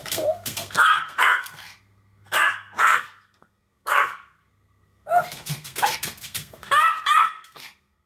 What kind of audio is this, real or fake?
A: fake